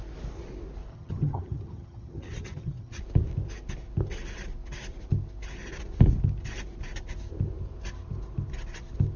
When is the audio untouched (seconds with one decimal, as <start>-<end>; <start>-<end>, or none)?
0.0-0.9; 3.0-9.2

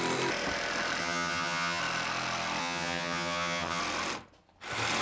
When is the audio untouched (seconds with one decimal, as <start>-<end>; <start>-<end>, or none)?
0.0-1.0; 1.8-2.6; 3.8-5.0

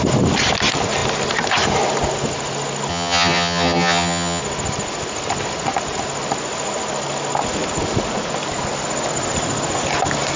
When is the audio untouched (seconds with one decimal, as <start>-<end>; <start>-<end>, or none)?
0.0-2.9; 4.4-10.4